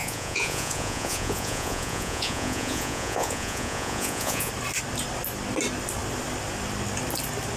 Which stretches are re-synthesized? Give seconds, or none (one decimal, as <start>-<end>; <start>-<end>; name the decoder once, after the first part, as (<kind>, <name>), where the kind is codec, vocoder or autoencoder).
0.0-4.5 (vocoder, Vocos)